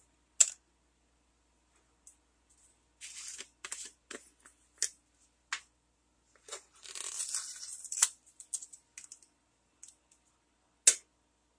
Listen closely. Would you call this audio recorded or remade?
recorded